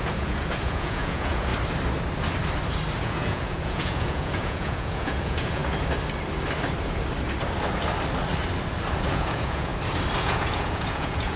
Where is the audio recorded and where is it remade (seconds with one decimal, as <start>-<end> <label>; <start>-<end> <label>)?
0.0-1.5 remade; 1.5-3.0 recorded; 3.0-5.6 remade; 5.6-9.1 recorded; 9.1-9.7 remade; 9.7-10.2 recorded; 10.2-11.4 remade